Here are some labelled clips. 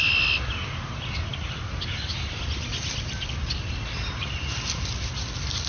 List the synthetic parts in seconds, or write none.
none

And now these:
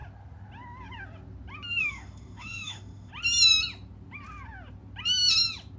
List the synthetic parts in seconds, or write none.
1.8-3.1 (autoencoder, DAC-VAE)

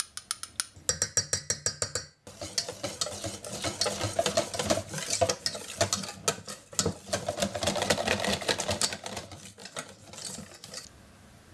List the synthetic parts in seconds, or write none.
none

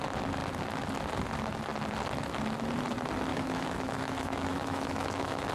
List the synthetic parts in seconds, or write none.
3.3-5.5 (autoencoder, DAC-VAE)

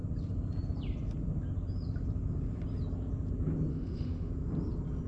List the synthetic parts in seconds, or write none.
3.7-4.3 (autoencoder, DAC-VAE)